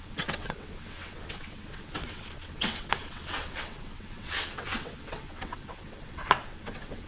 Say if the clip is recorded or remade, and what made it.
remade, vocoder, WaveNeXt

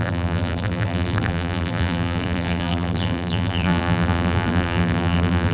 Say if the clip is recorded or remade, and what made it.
remade, vocoder, BigVGAN v2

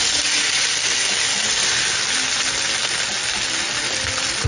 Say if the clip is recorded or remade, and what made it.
recorded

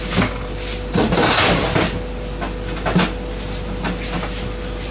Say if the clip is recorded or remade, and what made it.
recorded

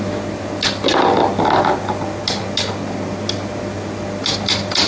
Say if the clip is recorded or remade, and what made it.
recorded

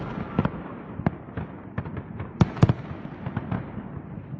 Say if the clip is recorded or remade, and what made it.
recorded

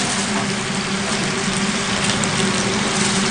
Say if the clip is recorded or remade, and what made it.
recorded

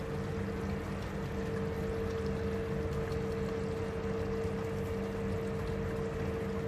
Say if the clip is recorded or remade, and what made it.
recorded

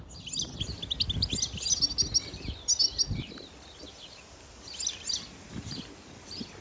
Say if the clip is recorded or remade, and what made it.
recorded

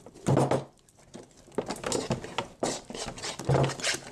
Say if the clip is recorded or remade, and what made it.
recorded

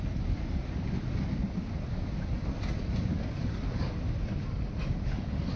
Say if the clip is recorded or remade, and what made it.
recorded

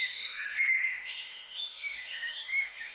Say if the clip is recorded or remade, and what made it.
remade, autoencoder, DAC-VAE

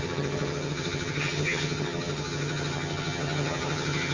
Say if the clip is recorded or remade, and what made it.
remade, vocoder, HiFi-GAN